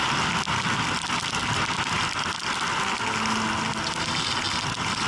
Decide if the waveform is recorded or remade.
recorded